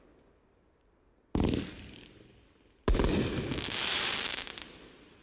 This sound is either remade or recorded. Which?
recorded